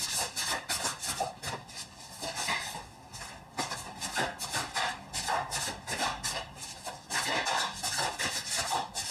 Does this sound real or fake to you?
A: real